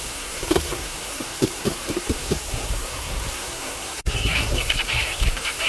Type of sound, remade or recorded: remade